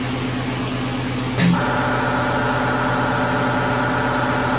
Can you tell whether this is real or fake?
real